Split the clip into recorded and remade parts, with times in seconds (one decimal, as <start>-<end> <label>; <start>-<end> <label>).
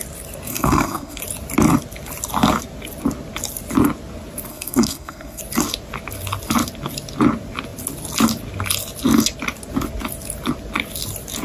0.0-0.5 recorded; 0.5-1.2 remade; 1.2-4.5 recorded; 4.5-5.4 remade; 5.4-11.4 recorded